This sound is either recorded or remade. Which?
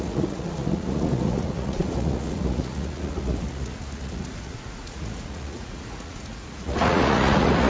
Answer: remade